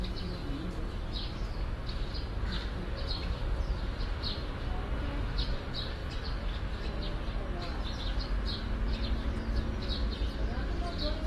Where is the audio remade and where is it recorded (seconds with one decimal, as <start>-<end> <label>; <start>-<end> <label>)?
0.0-11.3 recorded